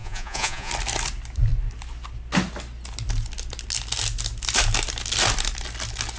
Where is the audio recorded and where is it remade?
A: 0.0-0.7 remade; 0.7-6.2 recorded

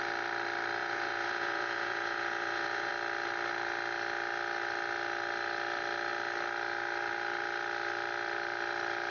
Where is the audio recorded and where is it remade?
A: 0.0-0.8 recorded; 0.8-2.9 remade; 2.9-9.1 recorded